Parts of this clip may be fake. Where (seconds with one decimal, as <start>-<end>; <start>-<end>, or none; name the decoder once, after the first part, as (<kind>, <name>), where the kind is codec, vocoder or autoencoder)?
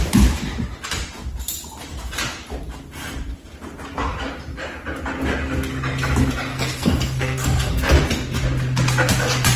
6.5-7.8 (codec, SNAC)